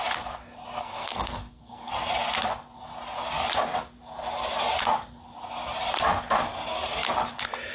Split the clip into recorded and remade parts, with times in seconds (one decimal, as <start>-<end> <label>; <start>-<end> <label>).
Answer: 0.0-0.8 recorded; 0.8-1.9 remade; 1.9-7.7 recorded